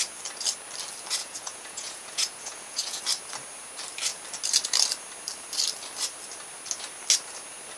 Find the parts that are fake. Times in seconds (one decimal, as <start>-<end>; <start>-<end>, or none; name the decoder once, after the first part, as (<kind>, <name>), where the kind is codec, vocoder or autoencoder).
1.2-3.0 (vocoder, Vocos)